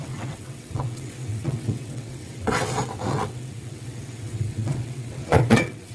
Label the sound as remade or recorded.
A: remade